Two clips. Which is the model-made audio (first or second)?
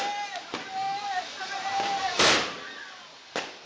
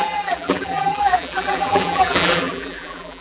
second